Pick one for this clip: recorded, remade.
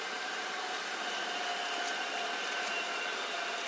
recorded